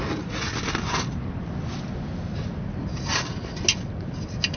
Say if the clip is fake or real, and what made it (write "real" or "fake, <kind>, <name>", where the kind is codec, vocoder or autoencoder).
real